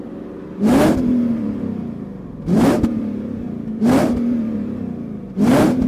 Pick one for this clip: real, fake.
fake